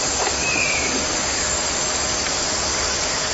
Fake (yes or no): no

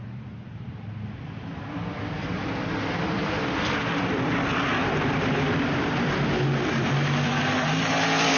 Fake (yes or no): yes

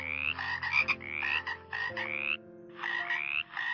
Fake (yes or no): no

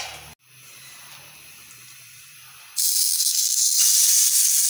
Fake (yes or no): no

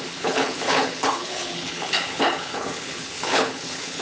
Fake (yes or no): yes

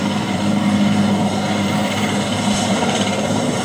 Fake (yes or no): yes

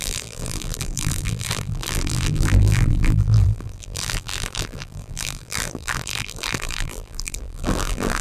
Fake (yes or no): yes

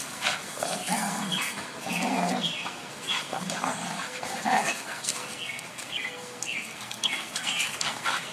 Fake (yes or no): yes